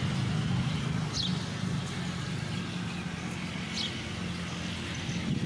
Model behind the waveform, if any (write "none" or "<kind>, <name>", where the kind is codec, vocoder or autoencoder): none